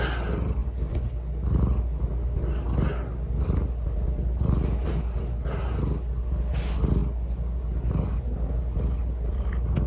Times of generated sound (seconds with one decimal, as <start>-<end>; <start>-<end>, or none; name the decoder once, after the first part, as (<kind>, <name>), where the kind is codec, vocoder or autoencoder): none